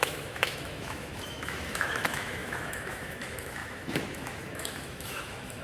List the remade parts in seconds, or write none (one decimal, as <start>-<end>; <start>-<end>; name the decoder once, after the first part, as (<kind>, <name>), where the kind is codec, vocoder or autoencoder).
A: 0.0-5.6 (autoencoder, DAC-VAE)